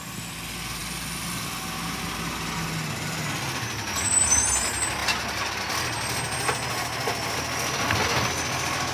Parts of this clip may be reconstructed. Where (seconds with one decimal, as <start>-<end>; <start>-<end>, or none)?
none